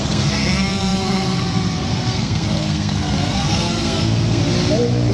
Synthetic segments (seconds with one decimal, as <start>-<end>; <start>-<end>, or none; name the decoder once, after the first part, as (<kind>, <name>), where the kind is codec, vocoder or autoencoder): 0.0-4.4 (codec, SNAC)